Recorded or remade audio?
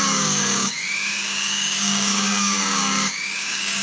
remade